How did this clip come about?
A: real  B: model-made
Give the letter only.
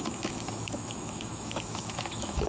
B